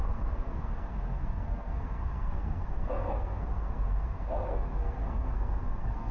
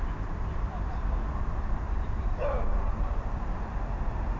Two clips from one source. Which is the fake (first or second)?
first